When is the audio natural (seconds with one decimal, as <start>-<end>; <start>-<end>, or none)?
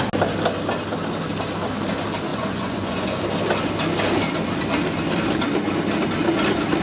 0.0-2.3; 3.2-6.8